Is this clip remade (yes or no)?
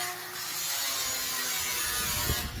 no